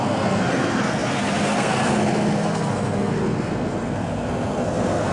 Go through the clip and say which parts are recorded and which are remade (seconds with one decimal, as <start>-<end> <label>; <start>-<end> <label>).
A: 0.0-5.1 remade